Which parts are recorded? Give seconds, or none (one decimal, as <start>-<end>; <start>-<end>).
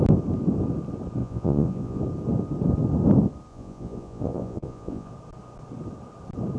0.0-1.2; 2.0-3.5; 5.1-6.6